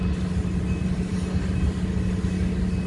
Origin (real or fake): real